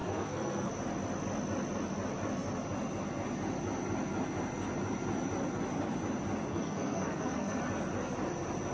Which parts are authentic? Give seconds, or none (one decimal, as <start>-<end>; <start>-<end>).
0.7-6.5; 7.6-8.7